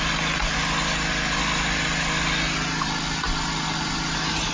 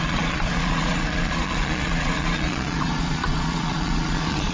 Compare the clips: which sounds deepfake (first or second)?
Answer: second